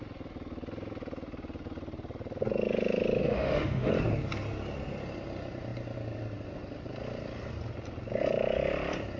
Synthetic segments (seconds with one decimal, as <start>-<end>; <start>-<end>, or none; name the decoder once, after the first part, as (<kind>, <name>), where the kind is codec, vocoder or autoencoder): 3.2-3.9 (autoencoder, DAC-VAE)